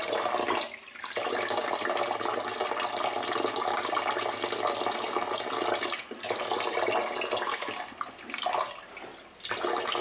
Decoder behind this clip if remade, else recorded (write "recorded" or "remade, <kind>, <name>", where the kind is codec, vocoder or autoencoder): recorded